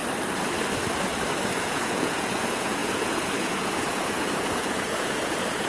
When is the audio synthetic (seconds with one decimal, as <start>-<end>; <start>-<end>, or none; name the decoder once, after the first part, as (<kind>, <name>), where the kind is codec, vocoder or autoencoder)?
1.6-5.7 (vocoder, Vocos)